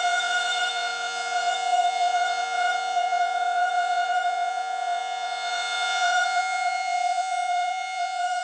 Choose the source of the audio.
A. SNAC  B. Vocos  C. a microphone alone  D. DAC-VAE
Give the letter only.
B